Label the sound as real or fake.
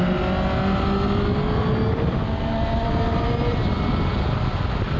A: real